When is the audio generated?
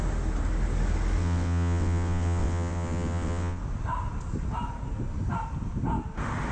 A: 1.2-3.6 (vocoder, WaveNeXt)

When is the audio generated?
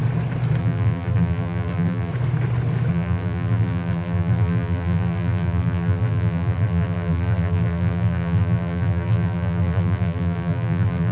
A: 0.6-2.1 (vocoder, BigVGAN v2); 2.9-11.1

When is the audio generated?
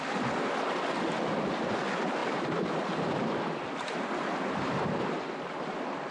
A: none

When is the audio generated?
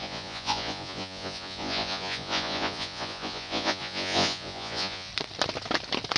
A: 0.0-5.1 (vocoder, Vocos)